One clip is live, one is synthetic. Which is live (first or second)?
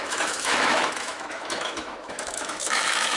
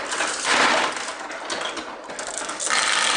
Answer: second